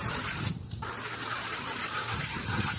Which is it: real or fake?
fake